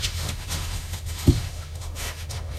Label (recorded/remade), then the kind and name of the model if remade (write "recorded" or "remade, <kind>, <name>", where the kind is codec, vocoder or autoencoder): remade, autoencoder, DAC-VAE